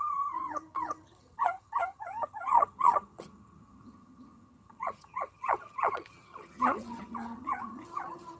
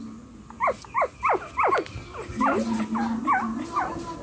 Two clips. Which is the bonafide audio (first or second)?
second